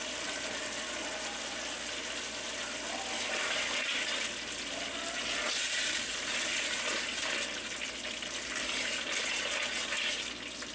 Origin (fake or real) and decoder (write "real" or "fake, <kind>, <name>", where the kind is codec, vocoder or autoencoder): real